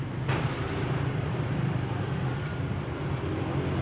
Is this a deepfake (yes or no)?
no